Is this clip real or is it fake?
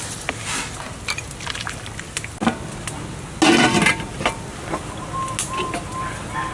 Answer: real